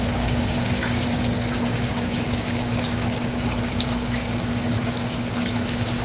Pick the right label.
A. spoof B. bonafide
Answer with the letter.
A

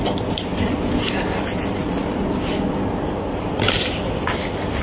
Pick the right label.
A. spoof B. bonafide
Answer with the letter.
B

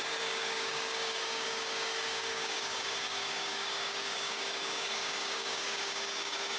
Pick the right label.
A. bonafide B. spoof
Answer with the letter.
B